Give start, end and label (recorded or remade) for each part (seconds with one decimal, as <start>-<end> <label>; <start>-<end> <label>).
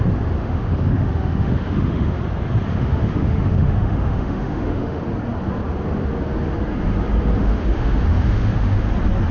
0.0-0.4 recorded; 0.4-2.2 remade; 2.2-2.7 recorded; 2.7-5.0 remade; 5.0-7.4 recorded; 7.4-8.9 remade; 8.9-9.3 recorded